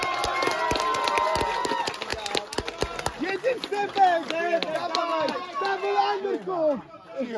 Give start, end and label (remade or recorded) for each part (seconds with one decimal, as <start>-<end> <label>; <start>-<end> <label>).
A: 0.0-7.4 recorded